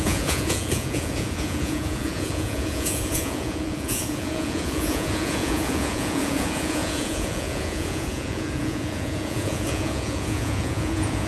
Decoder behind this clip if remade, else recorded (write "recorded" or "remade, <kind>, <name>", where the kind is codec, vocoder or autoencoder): remade, vocoder, Vocos